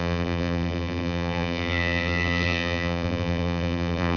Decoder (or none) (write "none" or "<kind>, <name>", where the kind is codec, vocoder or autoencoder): vocoder, BigVGAN v2